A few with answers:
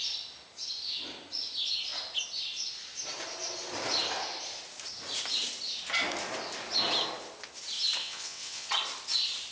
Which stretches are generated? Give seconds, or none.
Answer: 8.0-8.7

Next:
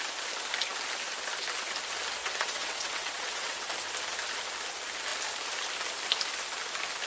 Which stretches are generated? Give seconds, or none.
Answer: 2.2-3.7

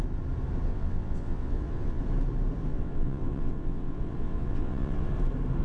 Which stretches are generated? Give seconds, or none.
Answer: 0.7-2.0; 2.7-5.1

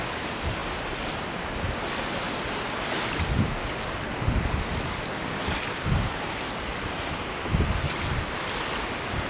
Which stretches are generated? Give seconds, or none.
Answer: none

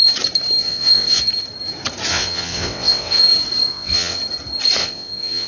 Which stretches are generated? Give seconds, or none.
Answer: 0.6-1.2; 2.1-3.2; 3.7-4.2; 4.8-5.5

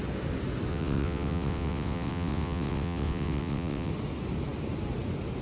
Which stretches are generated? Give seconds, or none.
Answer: 0.7-3.9